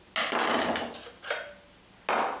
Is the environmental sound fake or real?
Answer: real